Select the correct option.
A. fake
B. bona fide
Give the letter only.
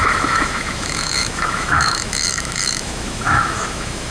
A